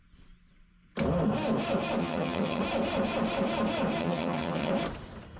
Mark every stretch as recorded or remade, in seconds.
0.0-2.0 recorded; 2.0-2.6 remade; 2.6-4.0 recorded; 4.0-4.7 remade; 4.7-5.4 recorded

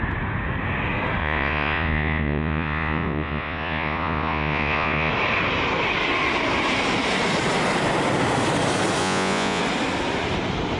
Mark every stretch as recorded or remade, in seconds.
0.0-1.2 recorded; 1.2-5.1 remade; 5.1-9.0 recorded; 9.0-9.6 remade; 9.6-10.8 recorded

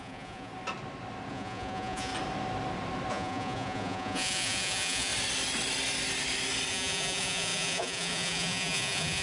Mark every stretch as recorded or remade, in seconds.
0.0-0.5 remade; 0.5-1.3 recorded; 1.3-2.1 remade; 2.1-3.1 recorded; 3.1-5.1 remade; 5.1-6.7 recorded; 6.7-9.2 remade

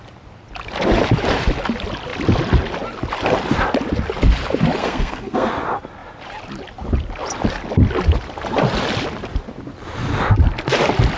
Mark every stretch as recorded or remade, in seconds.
0.0-4.8 recorded; 4.8-5.5 remade; 5.5-11.2 recorded

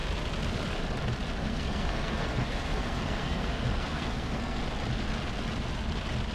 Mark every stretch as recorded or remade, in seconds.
0.0-1.4 recorded; 1.4-4.6 remade; 4.6-6.3 recorded

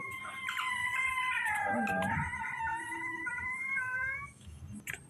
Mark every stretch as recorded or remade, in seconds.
0.0-2.7 recorded; 2.7-4.6 remade; 4.6-5.1 recorded